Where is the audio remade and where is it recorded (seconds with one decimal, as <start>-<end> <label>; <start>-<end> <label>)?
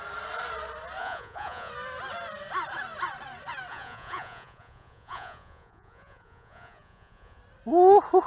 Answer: 0.0-1.0 recorded; 1.0-1.7 remade; 1.7-3.7 recorded; 3.7-7.4 remade; 7.4-8.3 recorded